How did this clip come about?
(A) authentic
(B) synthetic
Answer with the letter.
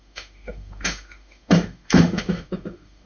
B